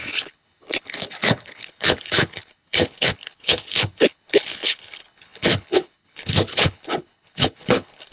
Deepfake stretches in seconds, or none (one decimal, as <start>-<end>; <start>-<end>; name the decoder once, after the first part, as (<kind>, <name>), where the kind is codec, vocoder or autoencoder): 0.0-8.1 (codec, HILCodec)